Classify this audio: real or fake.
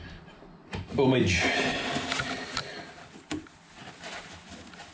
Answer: real